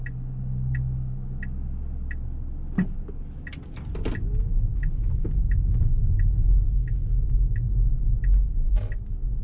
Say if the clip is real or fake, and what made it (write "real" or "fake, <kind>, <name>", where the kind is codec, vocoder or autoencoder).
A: real